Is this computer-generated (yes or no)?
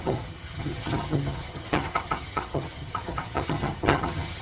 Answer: yes